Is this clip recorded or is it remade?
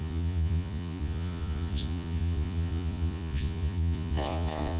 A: remade